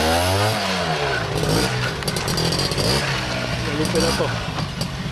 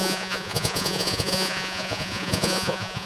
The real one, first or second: first